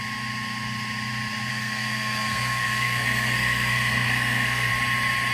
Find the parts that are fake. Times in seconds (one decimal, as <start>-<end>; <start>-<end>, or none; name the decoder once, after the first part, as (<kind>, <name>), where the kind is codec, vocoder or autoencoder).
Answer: 1.5-4.7 (codec, SNAC)